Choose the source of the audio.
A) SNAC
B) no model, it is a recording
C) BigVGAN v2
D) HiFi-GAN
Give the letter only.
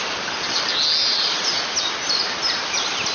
B